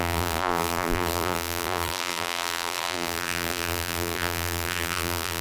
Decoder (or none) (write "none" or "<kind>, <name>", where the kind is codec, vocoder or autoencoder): vocoder, BigVGAN v2